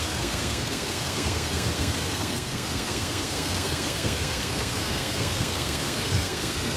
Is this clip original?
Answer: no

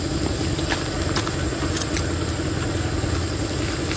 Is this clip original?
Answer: yes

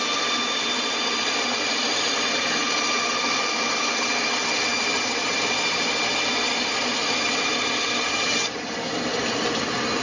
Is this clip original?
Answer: yes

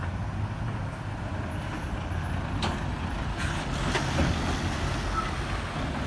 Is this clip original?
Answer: yes